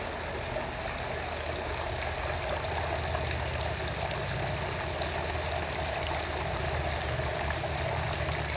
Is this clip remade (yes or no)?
no